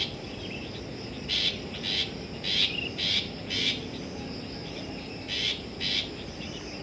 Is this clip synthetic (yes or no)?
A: no